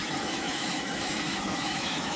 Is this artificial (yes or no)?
yes